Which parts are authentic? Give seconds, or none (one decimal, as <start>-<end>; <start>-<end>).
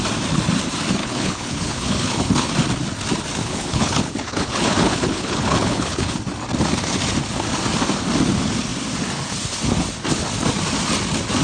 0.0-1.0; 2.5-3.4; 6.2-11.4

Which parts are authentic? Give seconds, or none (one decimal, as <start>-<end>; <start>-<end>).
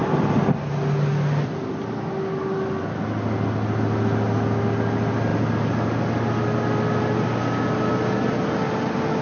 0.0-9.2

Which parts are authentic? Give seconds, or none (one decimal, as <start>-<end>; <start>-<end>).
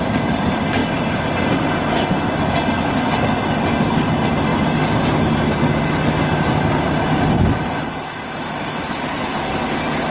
0.0-10.1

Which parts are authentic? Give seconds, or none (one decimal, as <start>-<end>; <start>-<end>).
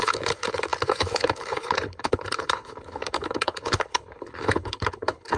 none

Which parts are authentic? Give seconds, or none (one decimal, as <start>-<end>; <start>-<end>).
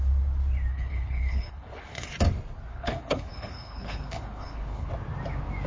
0.0-0.7; 2.1-2.7; 4.9-5.7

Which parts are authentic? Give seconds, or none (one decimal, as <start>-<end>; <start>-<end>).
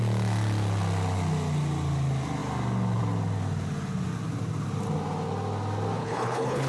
0.0-6.0